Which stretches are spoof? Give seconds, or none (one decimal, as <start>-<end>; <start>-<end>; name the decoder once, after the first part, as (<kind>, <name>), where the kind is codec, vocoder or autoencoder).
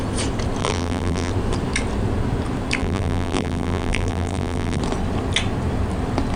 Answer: 0.6-1.3 (vocoder, BigVGAN v2); 2.8-4.8